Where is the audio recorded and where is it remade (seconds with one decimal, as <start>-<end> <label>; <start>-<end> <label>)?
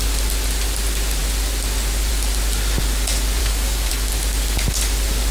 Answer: 0.0-3.4 recorded; 3.4-3.9 remade; 3.9-5.3 recorded